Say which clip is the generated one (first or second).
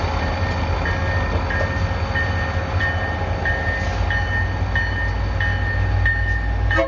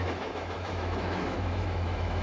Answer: second